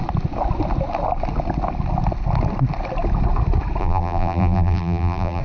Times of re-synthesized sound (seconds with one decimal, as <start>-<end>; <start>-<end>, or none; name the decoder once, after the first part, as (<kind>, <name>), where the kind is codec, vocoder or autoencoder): 3.8-5.4 (vocoder, BigVGAN v2)